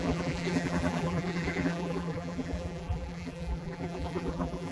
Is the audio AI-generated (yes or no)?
yes